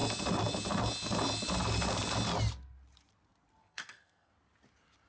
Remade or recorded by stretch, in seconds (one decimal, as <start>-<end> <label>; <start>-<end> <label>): 0.0-3.6 recorded; 3.6-4.3 remade; 4.3-5.1 recorded